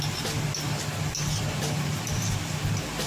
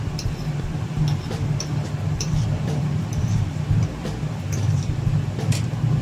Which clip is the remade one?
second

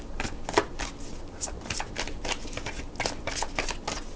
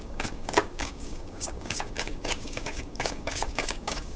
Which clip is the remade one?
second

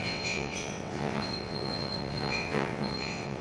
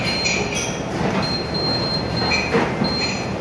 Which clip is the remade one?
first